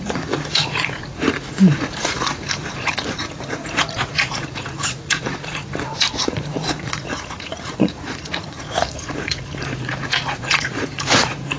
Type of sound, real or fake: fake